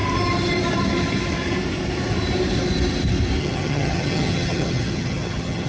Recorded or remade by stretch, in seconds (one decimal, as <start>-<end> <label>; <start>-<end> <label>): 0.0-3.4 recorded; 3.4-5.7 remade